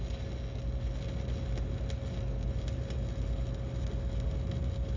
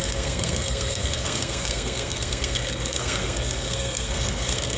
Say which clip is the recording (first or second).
first